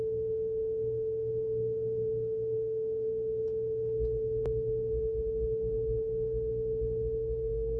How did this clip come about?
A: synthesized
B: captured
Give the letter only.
B